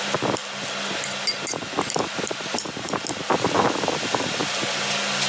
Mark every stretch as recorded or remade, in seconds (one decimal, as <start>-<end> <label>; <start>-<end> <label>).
0.0-5.3 recorded